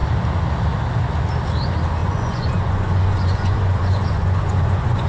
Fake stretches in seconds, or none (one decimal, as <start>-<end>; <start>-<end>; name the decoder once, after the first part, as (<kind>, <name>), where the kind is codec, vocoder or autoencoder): 2.0-5.1 (vocoder, Vocos)